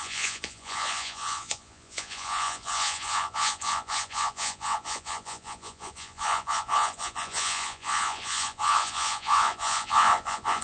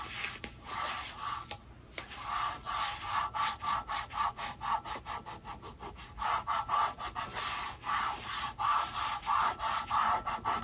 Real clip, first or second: second